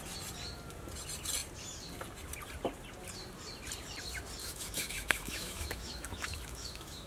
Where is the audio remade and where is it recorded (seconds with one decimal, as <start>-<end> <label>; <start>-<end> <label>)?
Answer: 0.0-4.4 recorded; 4.4-7.1 remade